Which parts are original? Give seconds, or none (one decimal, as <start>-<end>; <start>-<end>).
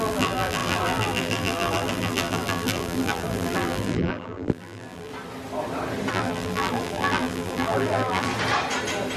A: 5.1-6.1; 8.3-9.2